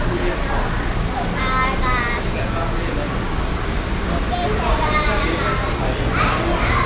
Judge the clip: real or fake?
real